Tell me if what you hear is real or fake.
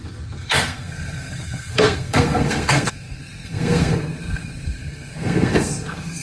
fake